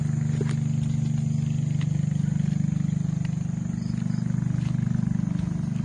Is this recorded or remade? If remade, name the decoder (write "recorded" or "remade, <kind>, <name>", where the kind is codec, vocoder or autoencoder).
recorded